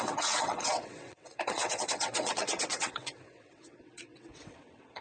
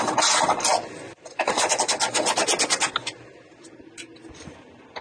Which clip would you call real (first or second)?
second